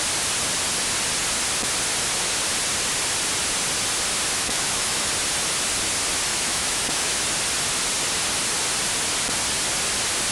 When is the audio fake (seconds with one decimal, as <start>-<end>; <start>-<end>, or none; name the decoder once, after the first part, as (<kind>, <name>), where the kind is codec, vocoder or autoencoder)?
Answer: 4.4-5.1 (autoencoder, DAC-VAE); 6.3-7.2